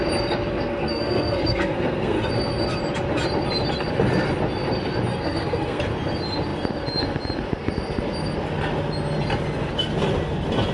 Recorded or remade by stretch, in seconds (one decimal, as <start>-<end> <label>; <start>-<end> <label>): 0.0-0.5 recorded; 0.5-2.3 remade; 2.3-5.1 recorded; 5.1-5.8 remade; 5.8-10.7 recorded